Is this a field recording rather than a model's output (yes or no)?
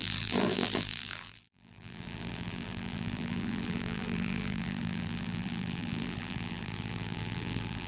no